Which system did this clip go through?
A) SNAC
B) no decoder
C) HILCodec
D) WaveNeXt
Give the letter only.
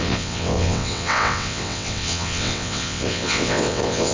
D